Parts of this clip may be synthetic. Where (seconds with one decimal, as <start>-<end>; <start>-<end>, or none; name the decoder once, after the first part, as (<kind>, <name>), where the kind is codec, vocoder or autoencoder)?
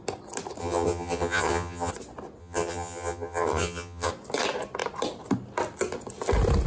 0.6-1.9 (vocoder, HiFi-GAN); 2.4-4.1